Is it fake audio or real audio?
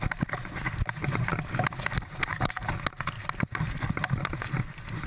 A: real